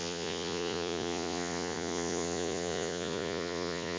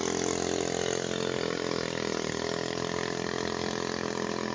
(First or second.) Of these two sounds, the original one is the second